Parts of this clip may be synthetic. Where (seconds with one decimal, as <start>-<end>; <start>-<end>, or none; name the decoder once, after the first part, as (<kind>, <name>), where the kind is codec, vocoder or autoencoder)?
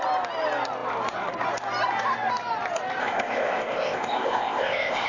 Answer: 3.0-5.1 (codec, ZipCodec)